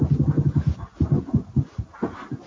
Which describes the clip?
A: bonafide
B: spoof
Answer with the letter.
A